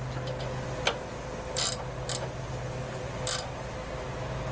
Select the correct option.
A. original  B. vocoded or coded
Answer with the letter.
A